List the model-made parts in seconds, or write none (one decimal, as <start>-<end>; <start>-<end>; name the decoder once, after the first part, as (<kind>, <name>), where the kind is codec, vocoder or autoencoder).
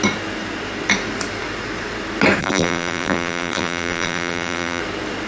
2.4-4.8 (vocoder, BigVGAN v2)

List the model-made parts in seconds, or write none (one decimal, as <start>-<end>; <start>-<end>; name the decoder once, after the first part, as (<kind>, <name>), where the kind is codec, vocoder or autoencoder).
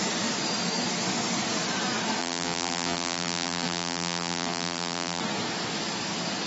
2.2-5.2 (vocoder, BigVGAN v2)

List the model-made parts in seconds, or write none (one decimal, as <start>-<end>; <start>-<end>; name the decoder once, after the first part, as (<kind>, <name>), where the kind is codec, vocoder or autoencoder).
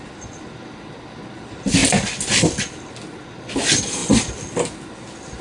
none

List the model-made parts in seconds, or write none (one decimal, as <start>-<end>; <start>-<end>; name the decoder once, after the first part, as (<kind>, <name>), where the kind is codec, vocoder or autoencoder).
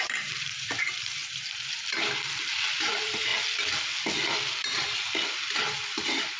0.0-3.3 (vocoder, BigVGAN v2)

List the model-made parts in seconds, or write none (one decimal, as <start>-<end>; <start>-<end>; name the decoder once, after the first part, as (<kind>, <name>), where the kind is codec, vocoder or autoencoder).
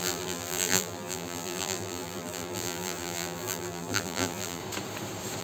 0.0-4.6 (vocoder, BigVGAN v2)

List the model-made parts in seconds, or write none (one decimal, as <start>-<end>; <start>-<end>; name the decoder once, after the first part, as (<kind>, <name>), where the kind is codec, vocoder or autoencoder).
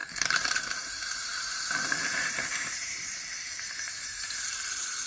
0.0-5.1 (vocoder, BigVGAN v2)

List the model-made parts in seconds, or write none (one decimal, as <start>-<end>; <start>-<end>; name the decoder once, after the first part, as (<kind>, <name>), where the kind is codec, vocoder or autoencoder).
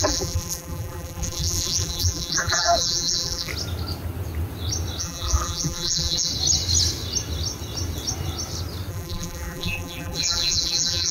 0.0-3.5 (vocoder, BigVGAN v2); 5.0-6.3; 8.9-11.1